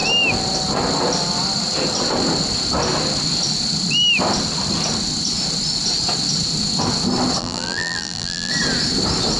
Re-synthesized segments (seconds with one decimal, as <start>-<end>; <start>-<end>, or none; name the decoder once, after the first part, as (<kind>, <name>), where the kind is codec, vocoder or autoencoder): 7.4-8.5 (vocoder, BigVGAN v2)